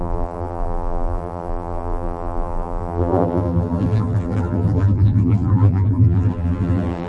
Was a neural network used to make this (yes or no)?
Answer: yes